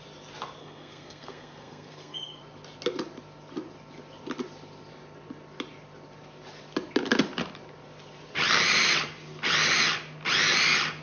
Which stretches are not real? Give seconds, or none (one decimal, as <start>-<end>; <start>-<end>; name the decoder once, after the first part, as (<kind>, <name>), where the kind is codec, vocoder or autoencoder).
0.6-2.4 (codec, SNAC)